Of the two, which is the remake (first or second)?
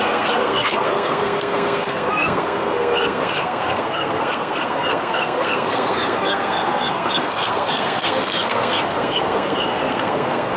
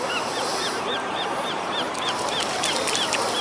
first